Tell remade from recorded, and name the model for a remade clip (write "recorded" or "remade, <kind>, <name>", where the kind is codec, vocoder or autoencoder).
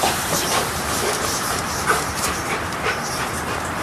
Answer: remade, vocoder, BigVGAN v2